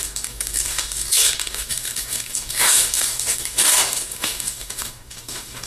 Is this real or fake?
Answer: fake